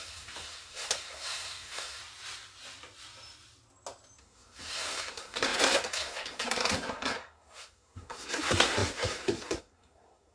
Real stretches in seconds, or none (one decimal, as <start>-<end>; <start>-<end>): 2.0-4.2